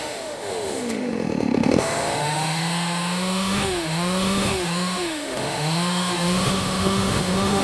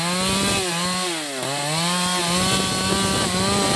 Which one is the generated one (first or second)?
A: first